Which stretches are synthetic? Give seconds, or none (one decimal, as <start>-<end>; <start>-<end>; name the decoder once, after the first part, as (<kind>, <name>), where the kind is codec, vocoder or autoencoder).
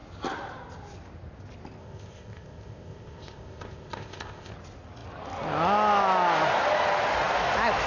1.8-4.5 (codec, ZipCodec)